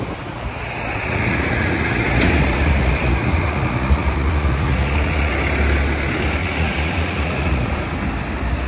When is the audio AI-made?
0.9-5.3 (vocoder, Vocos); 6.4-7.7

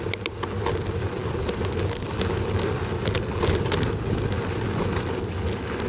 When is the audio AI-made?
none

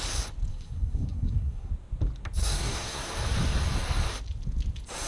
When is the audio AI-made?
0.5-1.7 (codec, SNAC); 2.4-3.1

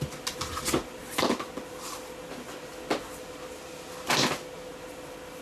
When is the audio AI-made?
none

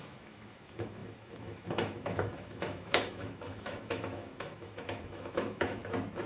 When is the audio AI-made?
0.0-5.8 (autoencoder, DAC-VAE)